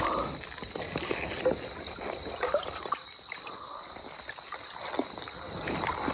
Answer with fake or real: real